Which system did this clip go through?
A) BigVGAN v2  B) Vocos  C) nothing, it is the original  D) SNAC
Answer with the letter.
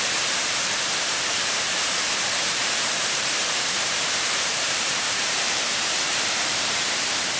A